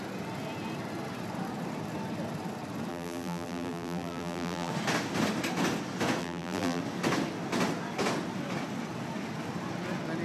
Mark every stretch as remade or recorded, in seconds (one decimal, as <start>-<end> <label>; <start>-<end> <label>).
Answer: 0.0-2.9 recorded; 2.9-4.7 remade; 4.7-6.2 recorded; 6.2-6.8 remade; 6.8-10.2 recorded